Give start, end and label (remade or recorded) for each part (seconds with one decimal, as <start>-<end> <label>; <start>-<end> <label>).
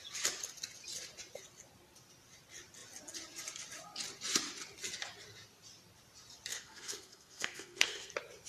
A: 0.0-6.5 recorded; 6.5-8.1 remade; 8.1-8.5 recorded